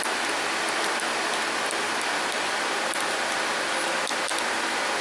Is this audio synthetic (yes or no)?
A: no